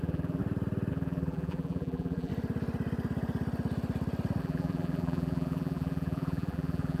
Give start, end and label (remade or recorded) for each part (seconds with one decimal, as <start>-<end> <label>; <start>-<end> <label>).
0.0-0.4 remade; 0.4-0.9 recorded; 0.9-2.3 remade; 2.3-4.4 recorded; 4.4-7.0 remade